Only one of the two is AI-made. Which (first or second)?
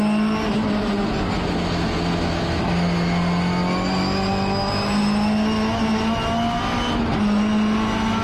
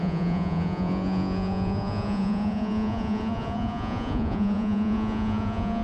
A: second